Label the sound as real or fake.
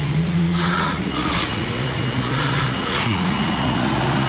fake